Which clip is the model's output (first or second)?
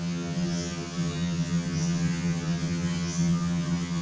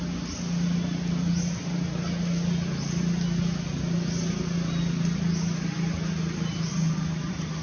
first